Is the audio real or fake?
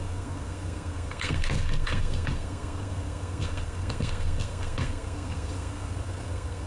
fake